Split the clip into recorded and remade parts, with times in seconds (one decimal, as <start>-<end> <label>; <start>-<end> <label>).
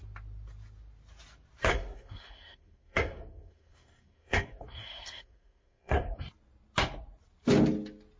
0.0-1.7 recorded; 1.7-6.2 remade; 6.2-8.2 recorded